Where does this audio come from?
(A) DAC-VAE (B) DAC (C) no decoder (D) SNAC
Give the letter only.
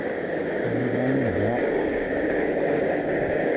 B